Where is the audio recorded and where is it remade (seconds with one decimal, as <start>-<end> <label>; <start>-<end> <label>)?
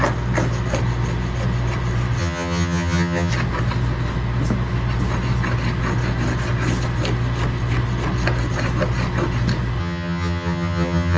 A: 0.0-2.2 recorded; 2.2-3.3 remade; 3.3-9.8 recorded; 9.8-11.2 remade